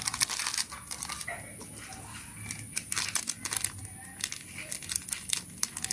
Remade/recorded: recorded